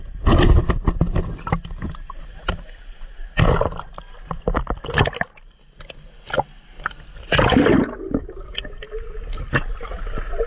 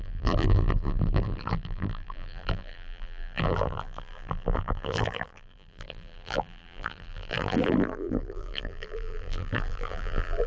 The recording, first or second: first